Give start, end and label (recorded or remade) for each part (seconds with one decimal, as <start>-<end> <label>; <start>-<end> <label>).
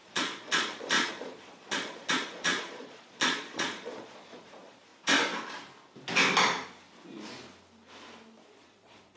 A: 0.0-4.9 remade; 4.9-8.5 recorded; 8.5-9.2 remade